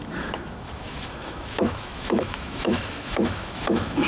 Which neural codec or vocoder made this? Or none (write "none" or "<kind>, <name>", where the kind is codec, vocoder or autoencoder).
autoencoder, DAC-VAE